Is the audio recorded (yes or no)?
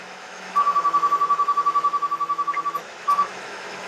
no